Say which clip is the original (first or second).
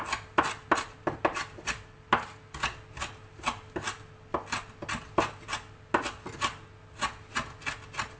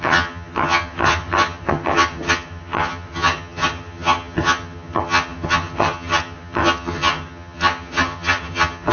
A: first